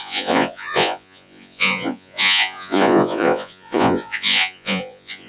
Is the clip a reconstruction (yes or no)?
yes